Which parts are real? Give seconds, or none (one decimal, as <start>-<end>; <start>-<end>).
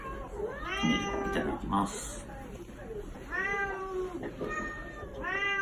0.0-2.1; 4.3-4.8